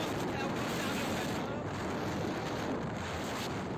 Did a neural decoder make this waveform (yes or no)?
no